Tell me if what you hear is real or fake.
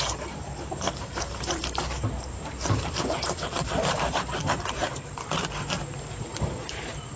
fake